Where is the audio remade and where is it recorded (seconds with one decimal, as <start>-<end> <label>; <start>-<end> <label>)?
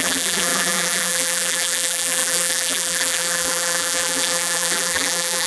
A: 0.0-5.5 remade